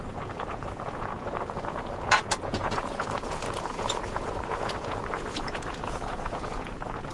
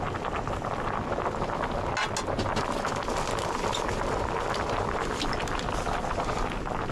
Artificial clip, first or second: first